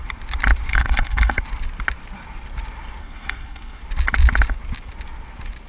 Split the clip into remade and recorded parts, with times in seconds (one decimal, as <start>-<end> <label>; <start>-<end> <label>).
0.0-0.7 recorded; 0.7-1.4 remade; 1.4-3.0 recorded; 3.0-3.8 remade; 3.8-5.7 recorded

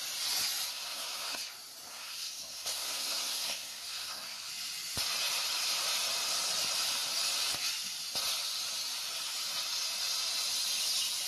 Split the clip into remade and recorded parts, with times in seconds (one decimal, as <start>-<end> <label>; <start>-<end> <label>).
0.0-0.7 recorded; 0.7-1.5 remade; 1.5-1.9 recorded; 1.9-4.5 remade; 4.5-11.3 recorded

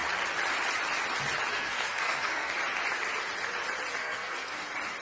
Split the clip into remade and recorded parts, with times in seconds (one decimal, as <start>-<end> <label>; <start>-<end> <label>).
0.0-1.5 recorded; 1.5-2.5 remade; 2.5-4.0 recorded; 4.0-4.6 remade; 4.6-5.0 recorded

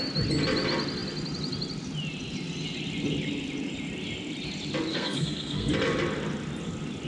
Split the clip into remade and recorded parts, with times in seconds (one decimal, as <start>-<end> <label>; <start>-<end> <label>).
0.0-4.9 recorded; 4.9-5.7 remade; 5.7-7.1 recorded

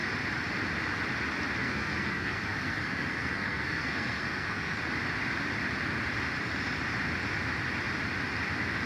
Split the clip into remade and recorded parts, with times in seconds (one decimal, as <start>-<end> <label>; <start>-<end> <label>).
0.0-1.6 recorded; 1.6-4.8 remade; 4.8-8.9 recorded

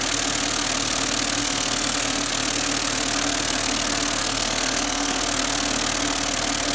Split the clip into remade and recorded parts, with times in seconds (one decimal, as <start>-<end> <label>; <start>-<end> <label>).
0.0-1.4 recorded; 1.4-2.3 remade; 2.3-4.2 recorded; 4.2-5.2 remade; 5.2-6.7 recorded

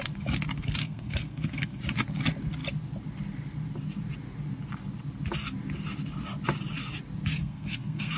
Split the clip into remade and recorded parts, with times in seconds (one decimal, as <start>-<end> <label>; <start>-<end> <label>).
0.0-0.8 recorded; 0.8-1.8 remade; 1.8-7.4 recorded; 7.4-8.2 remade